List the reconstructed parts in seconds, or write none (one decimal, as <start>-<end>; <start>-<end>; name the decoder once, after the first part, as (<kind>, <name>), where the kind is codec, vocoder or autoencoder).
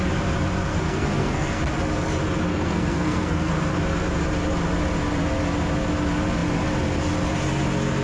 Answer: 0.7-1.6 (codec, SNAC); 2.5-3.5